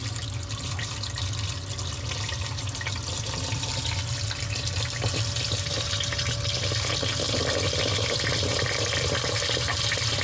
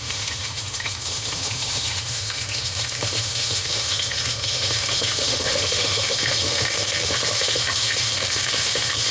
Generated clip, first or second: second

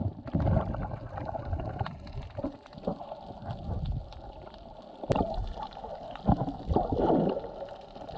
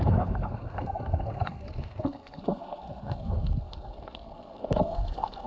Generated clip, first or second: second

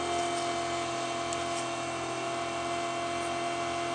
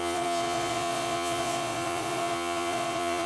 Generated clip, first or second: second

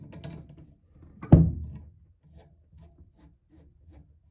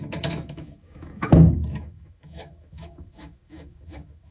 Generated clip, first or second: second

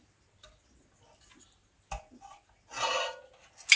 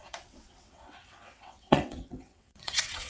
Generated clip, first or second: second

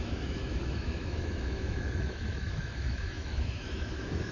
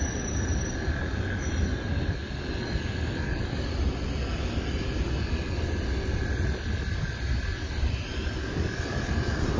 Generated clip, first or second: first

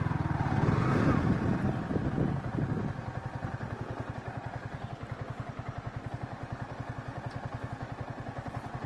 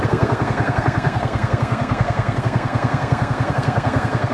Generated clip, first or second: second